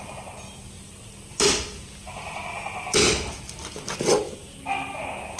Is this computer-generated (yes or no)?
no